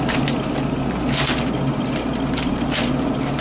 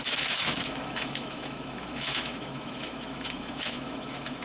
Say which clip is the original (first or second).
first